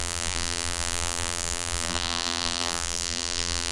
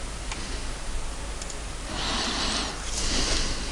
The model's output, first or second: first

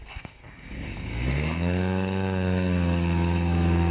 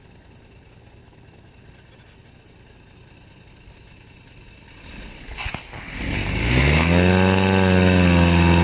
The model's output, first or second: first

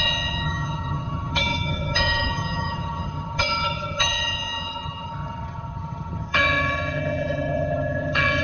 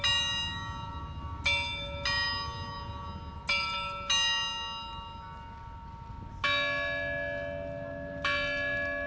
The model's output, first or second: first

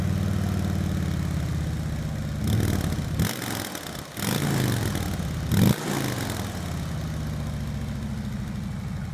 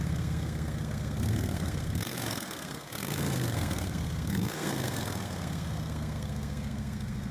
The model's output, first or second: second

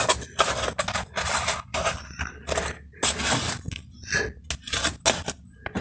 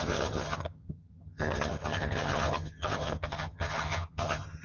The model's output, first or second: second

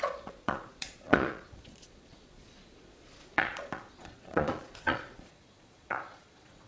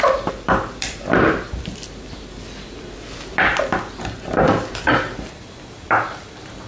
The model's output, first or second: first